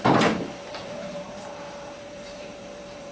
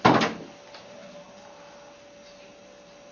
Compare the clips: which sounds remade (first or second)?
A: first